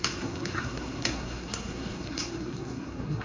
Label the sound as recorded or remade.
remade